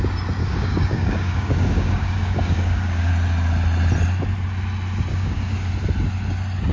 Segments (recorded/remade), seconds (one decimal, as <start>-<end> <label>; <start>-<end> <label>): 0.0-0.4 recorded; 0.4-3.1 remade; 3.1-5.1 recorded; 5.1-5.7 remade; 5.7-6.7 recorded